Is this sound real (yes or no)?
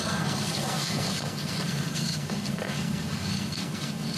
no